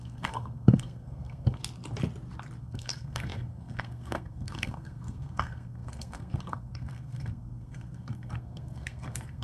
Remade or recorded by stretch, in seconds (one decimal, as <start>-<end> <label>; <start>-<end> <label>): 0.0-1.6 remade; 1.6-2.6 recorded; 2.6-9.4 remade